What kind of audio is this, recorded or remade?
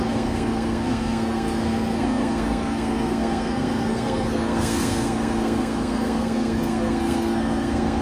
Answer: remade